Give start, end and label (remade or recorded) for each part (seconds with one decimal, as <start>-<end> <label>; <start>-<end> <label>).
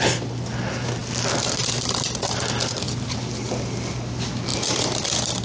0.0-5.4 recorded